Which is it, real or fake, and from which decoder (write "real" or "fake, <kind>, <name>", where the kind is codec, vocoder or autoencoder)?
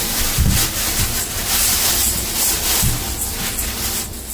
real